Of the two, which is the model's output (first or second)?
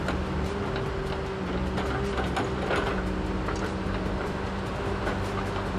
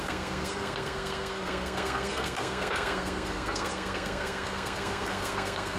second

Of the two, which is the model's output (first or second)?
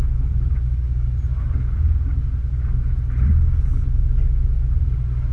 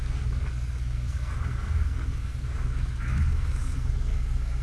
second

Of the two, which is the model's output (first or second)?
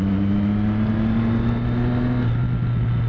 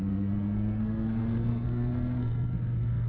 second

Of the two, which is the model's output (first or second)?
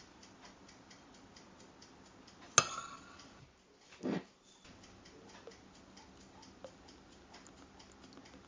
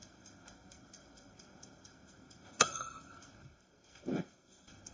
second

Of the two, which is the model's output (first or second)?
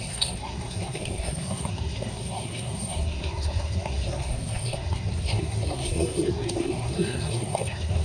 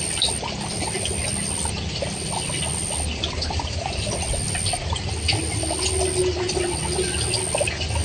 first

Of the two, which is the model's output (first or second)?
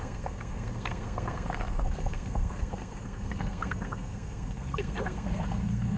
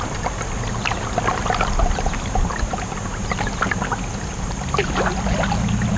first